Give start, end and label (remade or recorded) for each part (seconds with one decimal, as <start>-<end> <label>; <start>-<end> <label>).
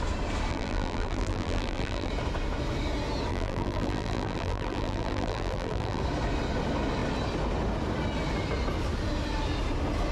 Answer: 0.0-0.5 recorded; 0.5-2.1 remade; 2.1-3.3 recorded; 3.3-6.0 remade; 6.0-10.1 recorded